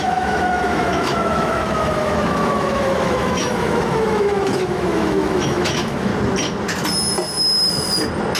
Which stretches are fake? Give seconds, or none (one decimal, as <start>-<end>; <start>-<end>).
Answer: 0.0-6.1